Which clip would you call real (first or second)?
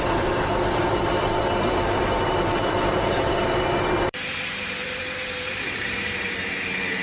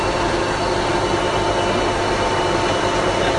second